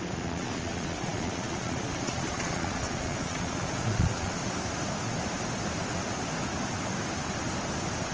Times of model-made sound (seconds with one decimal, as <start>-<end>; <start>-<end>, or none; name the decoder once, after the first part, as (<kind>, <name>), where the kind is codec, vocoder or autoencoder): 0.0-4.4 (vocoder, Vocos)